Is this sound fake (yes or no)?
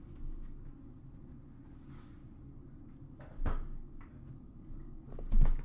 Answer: no